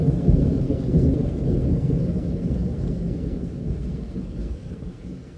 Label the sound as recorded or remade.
remade